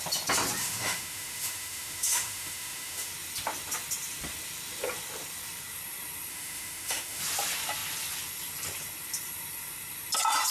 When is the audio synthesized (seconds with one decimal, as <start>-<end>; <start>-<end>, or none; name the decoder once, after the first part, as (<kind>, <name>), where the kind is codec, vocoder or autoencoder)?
0.6-3.1 (autoencoder, DAC-VAE); 6.3-7.2